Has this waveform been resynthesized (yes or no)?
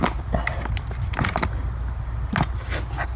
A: no